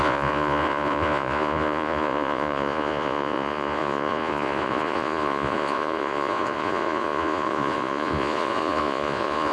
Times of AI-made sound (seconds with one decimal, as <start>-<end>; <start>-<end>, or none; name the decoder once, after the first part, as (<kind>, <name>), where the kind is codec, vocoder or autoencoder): 0.0-9.5 (vocoder, Vocos)

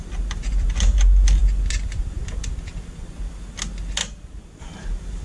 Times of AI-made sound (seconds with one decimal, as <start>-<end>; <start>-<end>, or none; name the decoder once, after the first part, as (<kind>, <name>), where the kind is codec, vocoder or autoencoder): none

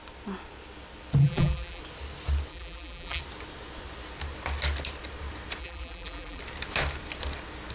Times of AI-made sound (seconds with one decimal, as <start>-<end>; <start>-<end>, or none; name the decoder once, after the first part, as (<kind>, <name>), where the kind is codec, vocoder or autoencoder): 1.2-1.8 (vocoder, BigVGAN v2); 2.5-3.2; 5.6-6.4

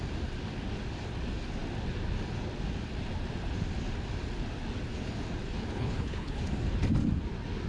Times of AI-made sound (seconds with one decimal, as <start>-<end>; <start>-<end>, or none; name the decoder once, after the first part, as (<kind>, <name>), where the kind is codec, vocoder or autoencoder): 5.7-6.4 (codec, HILCodec)

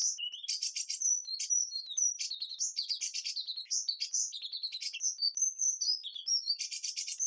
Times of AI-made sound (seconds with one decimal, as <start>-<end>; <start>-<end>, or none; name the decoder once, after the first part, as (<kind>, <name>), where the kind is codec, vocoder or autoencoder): 1.4-2.5 (vocoder, BigVGAN v2)

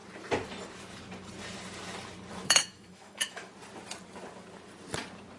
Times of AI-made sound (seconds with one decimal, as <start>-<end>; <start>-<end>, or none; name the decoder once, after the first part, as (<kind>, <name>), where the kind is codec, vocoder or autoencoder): 2.4-3.5 (autoencoder, DAC-VAE)